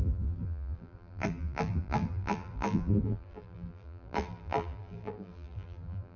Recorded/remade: remade